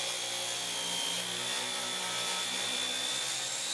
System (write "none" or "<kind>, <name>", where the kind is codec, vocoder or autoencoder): none